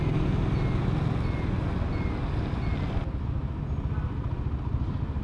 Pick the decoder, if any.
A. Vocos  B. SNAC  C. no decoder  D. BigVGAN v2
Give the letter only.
C